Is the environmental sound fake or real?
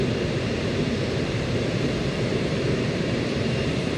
fake